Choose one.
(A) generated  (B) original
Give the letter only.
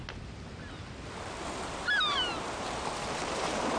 B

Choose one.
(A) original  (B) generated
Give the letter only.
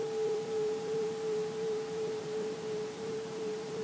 B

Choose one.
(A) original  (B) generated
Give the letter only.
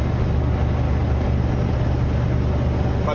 A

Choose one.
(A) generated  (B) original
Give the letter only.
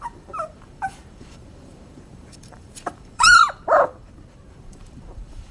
A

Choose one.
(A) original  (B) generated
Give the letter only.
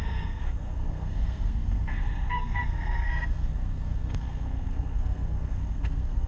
B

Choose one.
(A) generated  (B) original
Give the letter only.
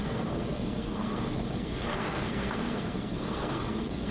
A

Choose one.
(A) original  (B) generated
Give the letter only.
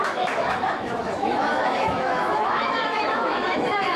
B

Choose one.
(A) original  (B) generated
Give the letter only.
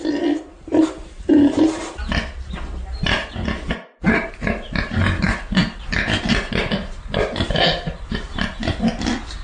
A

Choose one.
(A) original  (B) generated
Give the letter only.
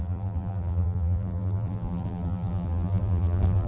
B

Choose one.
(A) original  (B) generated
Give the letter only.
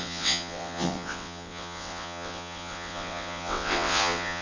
B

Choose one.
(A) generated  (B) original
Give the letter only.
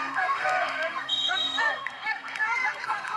A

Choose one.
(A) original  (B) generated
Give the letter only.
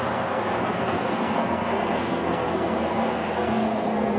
B